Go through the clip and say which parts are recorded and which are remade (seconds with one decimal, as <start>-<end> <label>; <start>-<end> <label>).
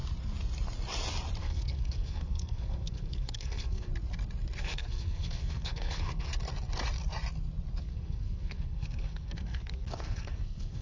0.0-1.4 recorded; 1.4-3.9 remade; 3.9-4.6 recorded; 4.6-6.3 remade; 6.3-7.8 recorded; 7.8-10.8 remade